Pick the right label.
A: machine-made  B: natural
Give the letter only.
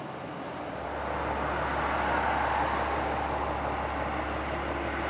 B